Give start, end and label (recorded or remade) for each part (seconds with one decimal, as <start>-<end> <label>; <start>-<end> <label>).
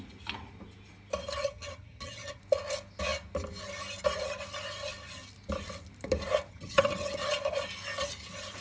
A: 0.0-1.4 recorded; 1.4-2.4 remade; 2.4-6.5 recorded; 6.5-7.1 remade; 7.1-8.6 recorded